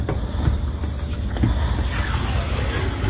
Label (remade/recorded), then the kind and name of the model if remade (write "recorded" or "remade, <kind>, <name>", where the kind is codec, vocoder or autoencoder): recorded